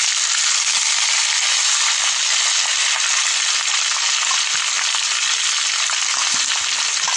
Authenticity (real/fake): real